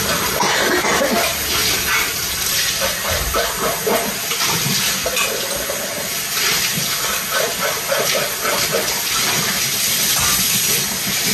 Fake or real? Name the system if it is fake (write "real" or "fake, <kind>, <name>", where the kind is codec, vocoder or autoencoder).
real